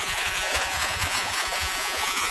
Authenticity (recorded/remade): remade